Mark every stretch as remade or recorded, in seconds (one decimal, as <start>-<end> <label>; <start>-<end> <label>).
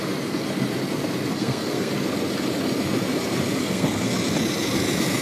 0.0-1.3 recorded; 1.3-1.9 remade; 1.9-3.6 recorded; 3.6-4.1 remade; 4.1-5.2 recorded